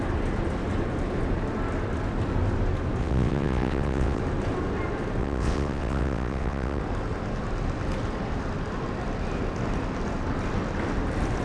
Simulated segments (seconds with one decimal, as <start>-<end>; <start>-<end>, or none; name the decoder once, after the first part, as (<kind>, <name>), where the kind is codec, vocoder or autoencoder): 3.0-4.2 (vocoder, WaveNeXt); 5.2-6.8